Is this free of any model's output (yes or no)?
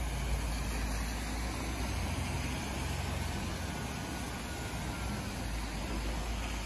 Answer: yes